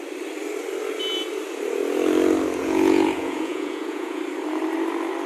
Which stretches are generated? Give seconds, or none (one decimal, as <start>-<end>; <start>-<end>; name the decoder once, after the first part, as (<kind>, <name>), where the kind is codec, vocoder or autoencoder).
2.6-4.2 (vocoder, Vocos)

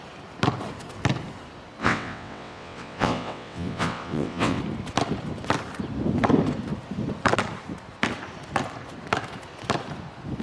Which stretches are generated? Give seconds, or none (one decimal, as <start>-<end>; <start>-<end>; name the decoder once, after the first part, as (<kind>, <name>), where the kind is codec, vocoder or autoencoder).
1.8-4.6 (vocoder, WaveNeXt)

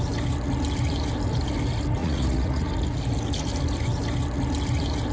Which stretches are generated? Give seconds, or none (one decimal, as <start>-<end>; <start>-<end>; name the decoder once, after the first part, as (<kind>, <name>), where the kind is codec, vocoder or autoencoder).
2.0-2.7 (vocoder, Vocos)

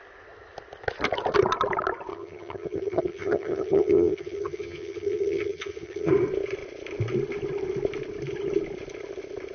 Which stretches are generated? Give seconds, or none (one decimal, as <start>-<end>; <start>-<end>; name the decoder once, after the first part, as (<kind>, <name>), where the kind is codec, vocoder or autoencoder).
2.1-6.1 (vocoder, HiFi-GAN)

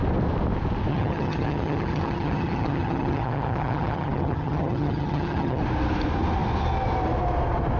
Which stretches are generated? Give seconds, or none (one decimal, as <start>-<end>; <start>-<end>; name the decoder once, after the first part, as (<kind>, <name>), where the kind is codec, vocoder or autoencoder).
0.9-5.6 (vocoder, HiFi-GAN)

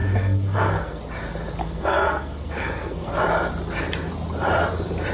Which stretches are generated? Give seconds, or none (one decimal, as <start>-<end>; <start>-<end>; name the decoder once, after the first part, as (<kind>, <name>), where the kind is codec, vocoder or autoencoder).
0.0-1.0 (codec, SNAC); 1.6-3.1

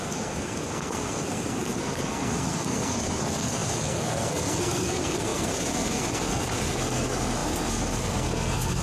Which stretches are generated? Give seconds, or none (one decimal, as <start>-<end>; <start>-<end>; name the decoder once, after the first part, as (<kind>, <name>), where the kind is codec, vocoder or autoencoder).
0.0-8.8 (codec, SNAC)

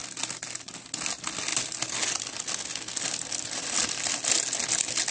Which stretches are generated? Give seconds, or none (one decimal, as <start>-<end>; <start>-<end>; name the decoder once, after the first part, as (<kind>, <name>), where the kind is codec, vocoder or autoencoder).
none